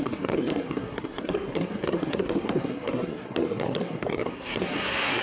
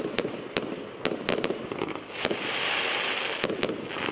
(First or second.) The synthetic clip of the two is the first